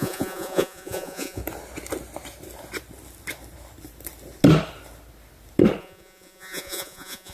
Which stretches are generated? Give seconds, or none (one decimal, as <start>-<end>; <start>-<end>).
0.0-1.4; 5.8-7.3